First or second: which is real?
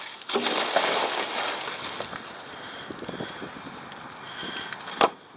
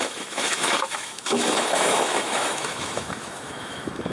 first